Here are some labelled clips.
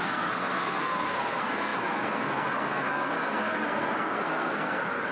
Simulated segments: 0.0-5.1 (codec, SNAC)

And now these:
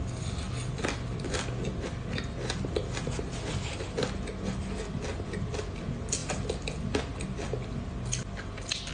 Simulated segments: none

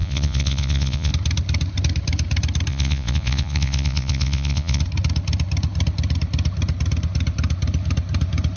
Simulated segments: 0.0-1.1 (vocoder, Vocos); 2.7-4.8

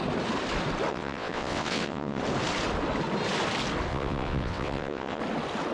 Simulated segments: 0.9-2.2 (vocoder, WaveNeXt); 3.9-5.2

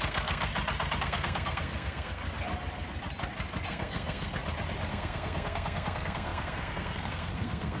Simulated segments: 0.0-0.5 (codec, SNAC); 1.0-2.2; 3.7-4.3; 4.9-7.8

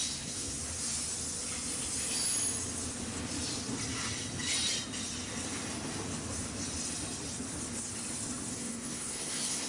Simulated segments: 0.0-0.6 (codec, SNAC); 8.5-9.7

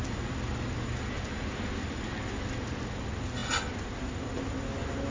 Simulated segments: none

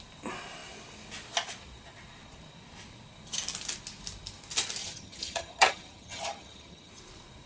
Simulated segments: 4.8-6.9 (vocoder, HiFi-GAN)